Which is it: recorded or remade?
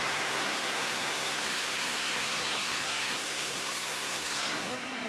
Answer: remade